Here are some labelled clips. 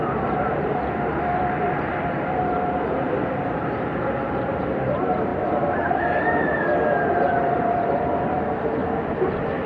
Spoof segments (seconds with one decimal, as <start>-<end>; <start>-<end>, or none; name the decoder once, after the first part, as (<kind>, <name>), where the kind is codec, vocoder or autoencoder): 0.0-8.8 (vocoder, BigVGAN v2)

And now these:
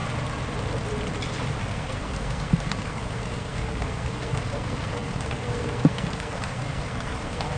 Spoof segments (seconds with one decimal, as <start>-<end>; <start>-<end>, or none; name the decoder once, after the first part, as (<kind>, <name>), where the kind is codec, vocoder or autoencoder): 1.6-7.6 (codec, SNAC)

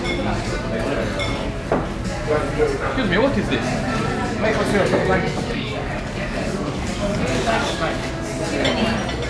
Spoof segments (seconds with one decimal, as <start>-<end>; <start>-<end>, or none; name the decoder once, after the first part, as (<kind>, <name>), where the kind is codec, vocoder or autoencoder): 5.0-8.1 (codec, DAC)

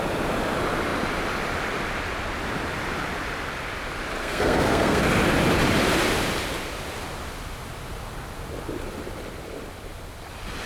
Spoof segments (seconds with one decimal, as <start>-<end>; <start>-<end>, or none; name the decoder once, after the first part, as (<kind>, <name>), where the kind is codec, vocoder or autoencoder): 4.2-5.0 (codec, SNAC)

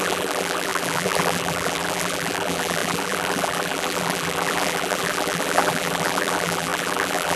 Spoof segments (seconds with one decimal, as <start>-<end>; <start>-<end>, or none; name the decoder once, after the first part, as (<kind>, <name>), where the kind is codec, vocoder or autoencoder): 0.0-7.4 (vocoder, BigVGAN v2)

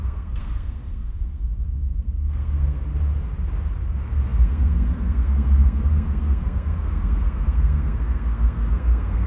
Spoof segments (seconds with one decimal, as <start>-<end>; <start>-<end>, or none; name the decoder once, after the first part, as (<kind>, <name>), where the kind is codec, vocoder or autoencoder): 0.0-2.9 (codec, SNAC); 3.9-9.3

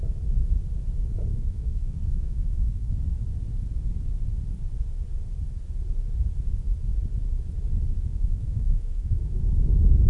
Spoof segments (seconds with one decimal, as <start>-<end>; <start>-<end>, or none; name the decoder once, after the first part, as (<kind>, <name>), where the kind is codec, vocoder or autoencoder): 1.3-2.9 (codec, SNAC); 8.1-9.4